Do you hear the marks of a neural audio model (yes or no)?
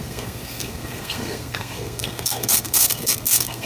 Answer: yes